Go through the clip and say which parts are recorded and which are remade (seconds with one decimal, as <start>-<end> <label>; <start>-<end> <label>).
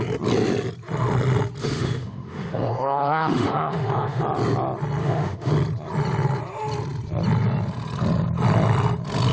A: 0.0-1.6 recorded; 1.6-4.2 remade; 4.2-5.0 recorded; 5.0-5.5 remade; 5.5-9.3 recorded